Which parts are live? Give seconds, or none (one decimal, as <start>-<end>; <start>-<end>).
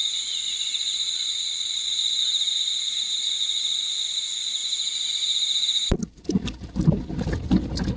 2.2-8.0